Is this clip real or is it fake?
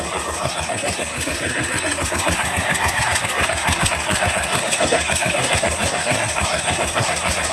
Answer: fake